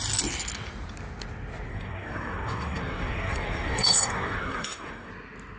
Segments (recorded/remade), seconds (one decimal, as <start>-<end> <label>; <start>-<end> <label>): 0.0-1.7 recorded; 1.7-5.1 remade; 5.1-5.6 recorded